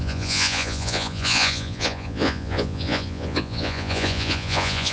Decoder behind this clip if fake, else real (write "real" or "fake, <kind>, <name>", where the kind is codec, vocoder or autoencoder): fake, vocoder, Vocos